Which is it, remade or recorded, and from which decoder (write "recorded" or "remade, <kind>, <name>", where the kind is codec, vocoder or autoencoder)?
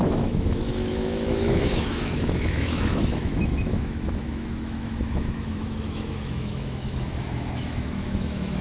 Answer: remade, autoencoder, DAC-VAE